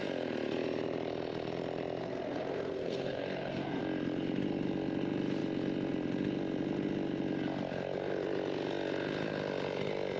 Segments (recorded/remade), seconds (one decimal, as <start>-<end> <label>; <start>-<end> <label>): 0.0-2.0 recorded; 2.0-3.8 remade; 3.8-10.2 recorded